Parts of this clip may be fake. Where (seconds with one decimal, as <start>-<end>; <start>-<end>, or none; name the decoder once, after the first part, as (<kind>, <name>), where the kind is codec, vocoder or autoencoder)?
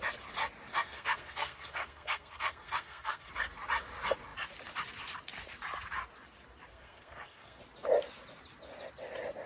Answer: 0.7-3.3 (codec, SNAC); 6.7-7.6